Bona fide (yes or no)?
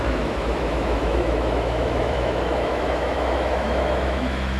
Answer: no